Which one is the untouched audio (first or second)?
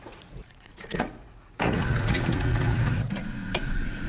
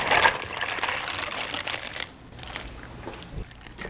second